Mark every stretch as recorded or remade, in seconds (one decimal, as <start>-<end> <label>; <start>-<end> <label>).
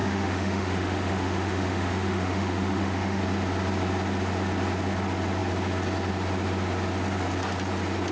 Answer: 0.0-3.2 remade; 3.2-8.1 recorded